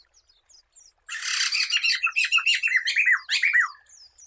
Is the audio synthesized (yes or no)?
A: no